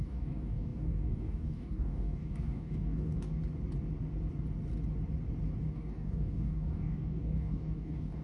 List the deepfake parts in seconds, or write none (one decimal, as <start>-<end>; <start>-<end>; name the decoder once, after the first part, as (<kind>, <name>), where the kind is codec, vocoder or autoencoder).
0.0-3.4 (codec, DAC); 5.7-8.2